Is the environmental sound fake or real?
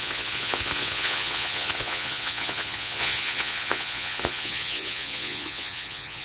fake